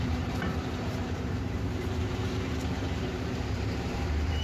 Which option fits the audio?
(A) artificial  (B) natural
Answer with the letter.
A